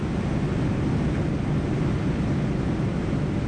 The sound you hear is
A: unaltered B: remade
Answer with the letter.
A